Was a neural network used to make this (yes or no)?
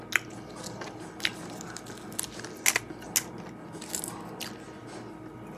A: no